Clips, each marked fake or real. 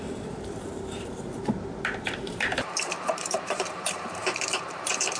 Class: fake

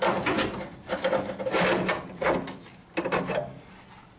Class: real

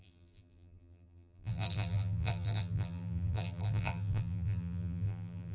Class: fake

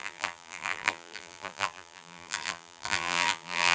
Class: fake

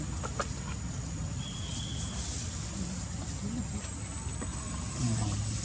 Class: real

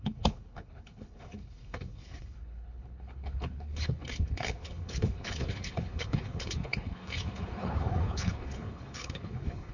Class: fake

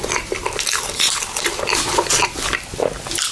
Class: real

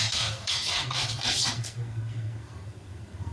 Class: fake